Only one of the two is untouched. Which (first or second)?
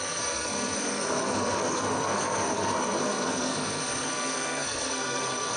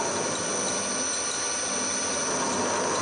second